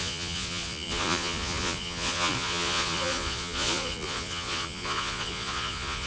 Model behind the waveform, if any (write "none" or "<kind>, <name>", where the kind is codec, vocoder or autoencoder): vocoder, Vocos